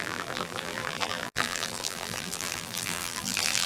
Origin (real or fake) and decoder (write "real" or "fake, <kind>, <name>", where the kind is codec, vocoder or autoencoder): fake, vocoder, BigVGAN v2